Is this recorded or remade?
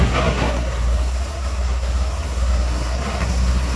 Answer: remade